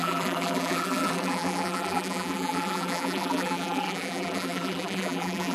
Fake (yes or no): yes